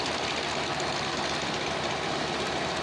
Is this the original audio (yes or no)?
yes